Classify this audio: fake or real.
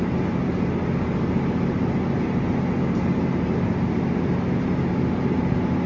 real